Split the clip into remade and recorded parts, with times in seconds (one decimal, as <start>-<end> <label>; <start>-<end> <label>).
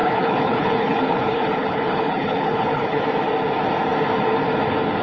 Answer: 0.0-3.0 remade; 3.0-5.0 recorded